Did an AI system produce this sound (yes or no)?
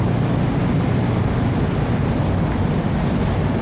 no